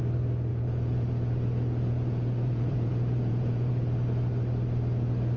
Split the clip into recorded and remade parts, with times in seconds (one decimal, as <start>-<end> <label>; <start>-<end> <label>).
0.0-0.5 recorded; 0.5-3.7 remade; 3.7-5.4 recorded